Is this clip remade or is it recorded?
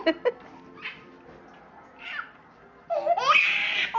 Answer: recorded